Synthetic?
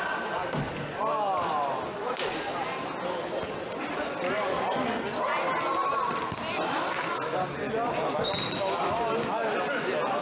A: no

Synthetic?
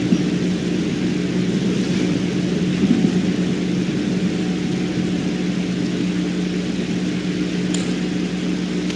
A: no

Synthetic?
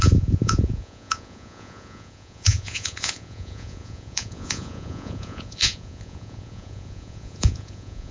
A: yes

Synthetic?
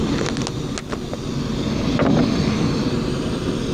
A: no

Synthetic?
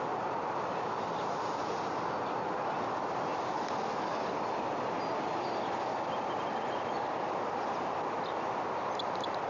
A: no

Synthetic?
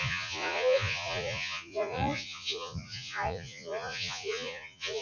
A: yes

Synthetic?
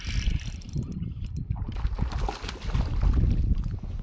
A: no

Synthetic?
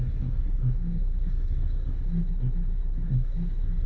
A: yes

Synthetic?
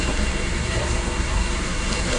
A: yes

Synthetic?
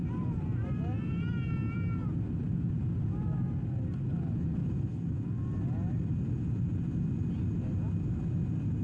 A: no